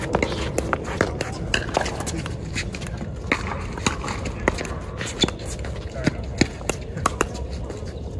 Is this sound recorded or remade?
recorded